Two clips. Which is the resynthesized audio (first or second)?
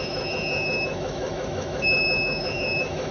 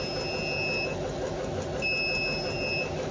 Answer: first